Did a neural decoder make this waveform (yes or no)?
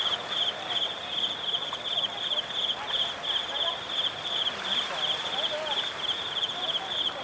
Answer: no